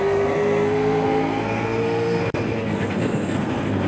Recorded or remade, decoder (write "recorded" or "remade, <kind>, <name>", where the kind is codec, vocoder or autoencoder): remade, codec, SNAC